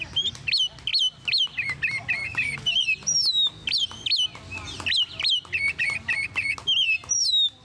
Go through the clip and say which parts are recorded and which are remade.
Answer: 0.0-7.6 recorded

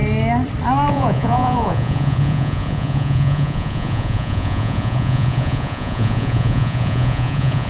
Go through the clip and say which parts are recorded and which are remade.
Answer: 0.0-0.9 recorded; 0.9-7.7 remade

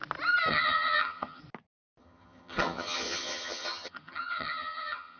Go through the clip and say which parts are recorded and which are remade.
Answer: 0.0-0.5 recorded; 0.5-1.4 remade; 1.4-2.0 recorded; 2.0-5.2 remade

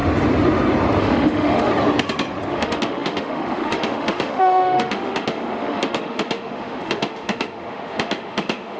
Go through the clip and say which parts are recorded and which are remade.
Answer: 0.0-1.0 recorded; 1.0-1.7 remade; 1.7-2.5 recorded; 2.5-8.8 remade

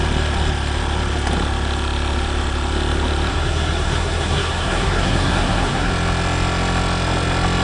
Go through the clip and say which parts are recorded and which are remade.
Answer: 0.0-3.3 recorded; 3.3-5.9 remade; 5.9-7.6 recorded

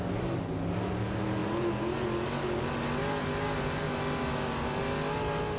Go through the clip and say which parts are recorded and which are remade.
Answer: 0.0-5.6 recorded

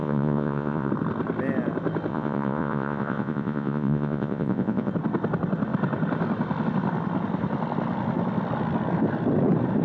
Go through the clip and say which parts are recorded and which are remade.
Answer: 0.0-0.9 remade; 0.9-2.1 recorded; 2.1-4.9 remade; 4.9-9.8 recorded